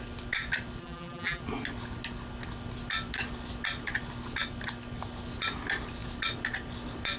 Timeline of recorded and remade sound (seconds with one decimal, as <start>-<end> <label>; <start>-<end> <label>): 0.0-0.8 recorded; 0.8-1.4 remade; 1.4-7.2 recorded